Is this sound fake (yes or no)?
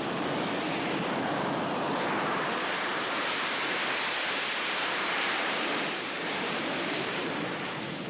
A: yes